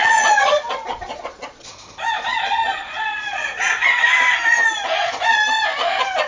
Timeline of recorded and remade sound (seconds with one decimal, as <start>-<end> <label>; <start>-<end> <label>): 0.0-1.7 remade; 1.7-2.3 recorded; 2.3-3.7 remade; 3.7-6.3 recorded